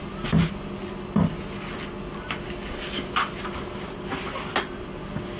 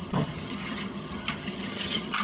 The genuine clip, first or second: first